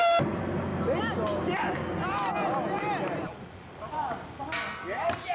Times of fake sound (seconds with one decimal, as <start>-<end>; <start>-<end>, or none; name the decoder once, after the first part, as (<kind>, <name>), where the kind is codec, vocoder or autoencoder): none